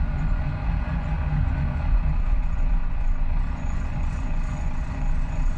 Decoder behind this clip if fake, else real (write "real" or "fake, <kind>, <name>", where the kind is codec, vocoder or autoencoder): fake, vocoder, Vocos